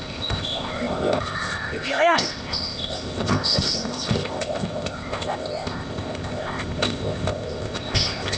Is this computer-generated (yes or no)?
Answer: yes